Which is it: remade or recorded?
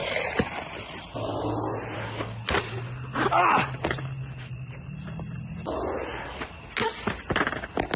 recorded